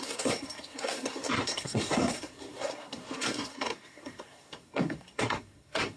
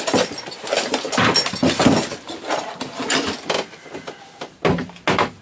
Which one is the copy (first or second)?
first